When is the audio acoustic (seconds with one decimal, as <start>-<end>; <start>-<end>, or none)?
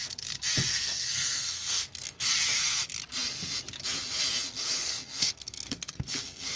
0.0-0.7; 2.3-4.8